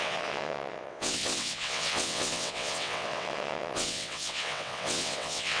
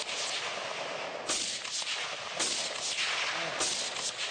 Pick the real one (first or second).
second